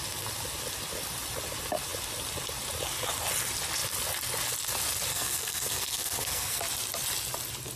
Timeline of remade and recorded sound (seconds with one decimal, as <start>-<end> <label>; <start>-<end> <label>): 0.0-5.1 recorded; 5.1-6.6 remade; 6.6-7.8 recorded

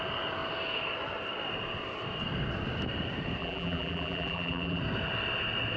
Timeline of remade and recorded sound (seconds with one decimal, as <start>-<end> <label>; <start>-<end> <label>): 0.0-3.4 recorded; 3.4-4.8 remade; 4.8-5.8 recorded

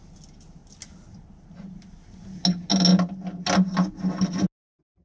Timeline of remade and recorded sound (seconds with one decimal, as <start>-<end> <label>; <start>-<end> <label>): 0.0-5.0 recorded

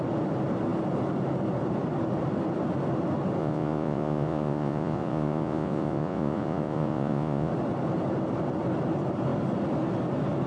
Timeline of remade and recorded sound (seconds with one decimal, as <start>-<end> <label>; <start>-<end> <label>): 0.0-3.4 recorded; 3.4-7.5 remade; 7.5-10.5 recorded

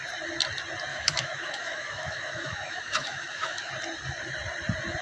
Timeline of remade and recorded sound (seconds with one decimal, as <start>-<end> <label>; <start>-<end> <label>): 0.0-0.9 recorded; 0.9-3.7 remade; 3.7-5.0 recorded

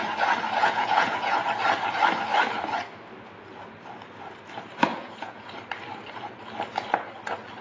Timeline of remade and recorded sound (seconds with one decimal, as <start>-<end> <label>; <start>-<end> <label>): 0.0-0.6 recorded; 0.6-1.4 remade; 1.4-4.9 recorded; 4.9-5.5 remade; 5.5-7.6 recorded